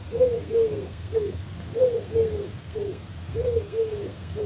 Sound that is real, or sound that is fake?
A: fake